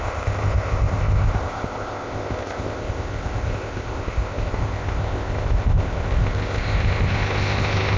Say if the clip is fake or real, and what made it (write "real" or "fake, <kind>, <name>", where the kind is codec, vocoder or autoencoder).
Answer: fake, codec, ZipCodec